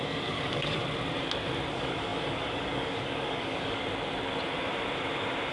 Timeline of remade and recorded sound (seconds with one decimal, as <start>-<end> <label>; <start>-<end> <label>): 0.0-0.8 remade; 0.8-1.7 recorded; 1.7-3.8 remade; 3.8-5.5 recorded